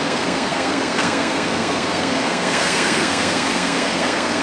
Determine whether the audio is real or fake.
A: fake